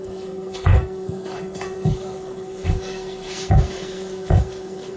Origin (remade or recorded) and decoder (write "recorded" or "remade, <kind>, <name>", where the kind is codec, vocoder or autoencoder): remade, codec, SNAC